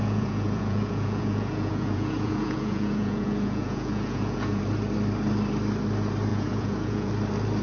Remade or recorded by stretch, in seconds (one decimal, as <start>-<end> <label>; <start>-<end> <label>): 0.0-4.6 remade; 4.6-6.3 recorded; 6.3-7.1 remade; 7.1-7.6 recorded